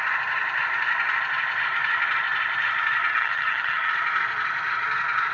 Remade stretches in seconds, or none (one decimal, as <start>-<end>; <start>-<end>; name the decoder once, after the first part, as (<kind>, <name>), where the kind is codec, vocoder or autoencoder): 3.1-3.9 (vocoder, HiFi-GAN)